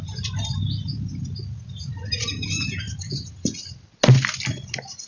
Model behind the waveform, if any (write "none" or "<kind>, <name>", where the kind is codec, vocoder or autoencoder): none